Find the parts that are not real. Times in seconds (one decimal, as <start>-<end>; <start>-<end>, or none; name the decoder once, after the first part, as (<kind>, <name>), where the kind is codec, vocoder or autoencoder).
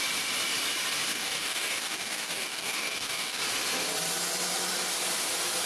1.1-3.4 (codec, DAC)